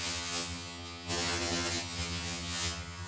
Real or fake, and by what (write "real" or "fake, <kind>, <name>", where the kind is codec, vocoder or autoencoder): fake, vocoder, HiFi-GAN